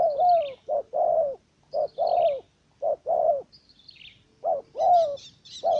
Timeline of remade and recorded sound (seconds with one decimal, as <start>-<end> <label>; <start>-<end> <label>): 0.0-5.8 recorded